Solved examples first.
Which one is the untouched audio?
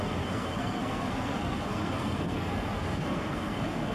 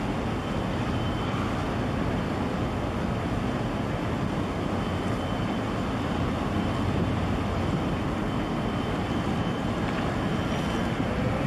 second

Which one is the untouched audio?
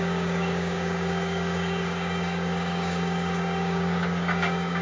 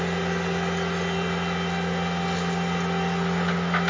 second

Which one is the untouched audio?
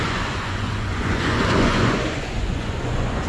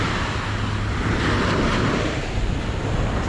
second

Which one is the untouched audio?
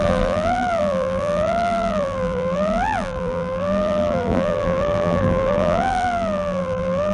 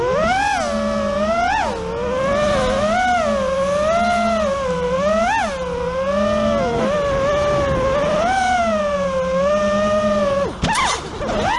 second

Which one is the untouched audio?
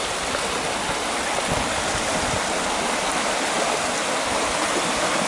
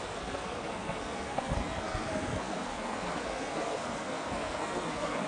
first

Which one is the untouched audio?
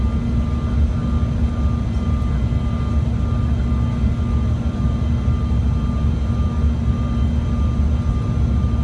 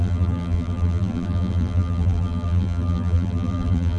first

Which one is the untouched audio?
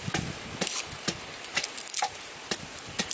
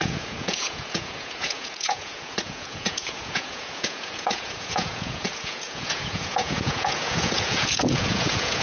first